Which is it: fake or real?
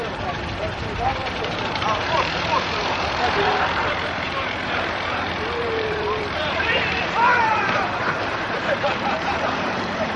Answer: fake